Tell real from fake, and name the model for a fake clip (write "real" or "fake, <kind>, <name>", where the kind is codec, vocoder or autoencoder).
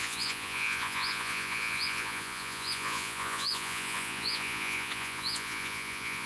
fake, vocoder, Vocos